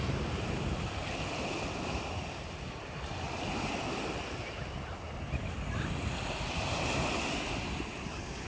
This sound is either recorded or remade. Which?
recorded